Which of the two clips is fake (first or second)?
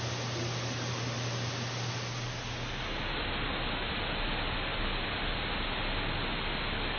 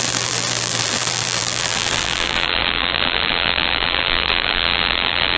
second